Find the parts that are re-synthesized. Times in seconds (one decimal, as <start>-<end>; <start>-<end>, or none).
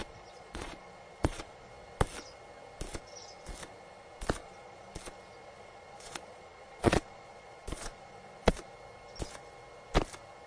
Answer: 0.0-1.7; 4.4-5.0; 5.4-8.7